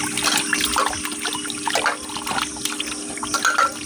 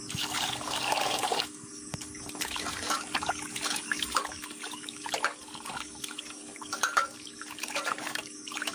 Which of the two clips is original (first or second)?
first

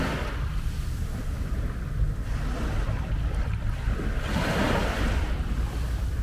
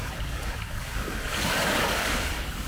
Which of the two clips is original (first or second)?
first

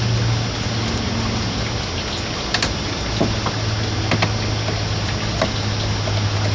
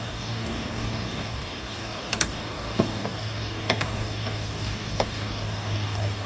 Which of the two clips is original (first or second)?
first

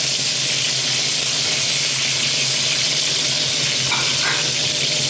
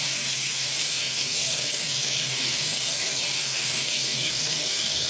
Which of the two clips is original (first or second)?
first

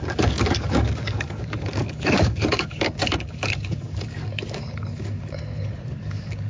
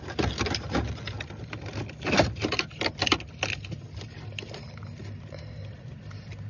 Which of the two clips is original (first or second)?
second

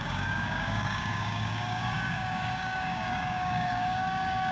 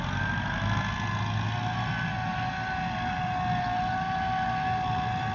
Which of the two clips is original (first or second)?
second